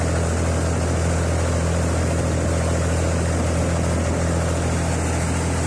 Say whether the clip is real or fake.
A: real